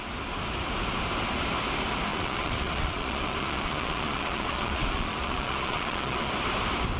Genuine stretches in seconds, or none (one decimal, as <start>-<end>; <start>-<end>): 0.0-2.1; 6.3-7.0